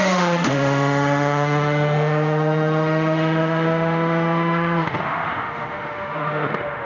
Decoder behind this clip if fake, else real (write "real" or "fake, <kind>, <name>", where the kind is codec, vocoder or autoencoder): fake, autoencoder, DAC-VAE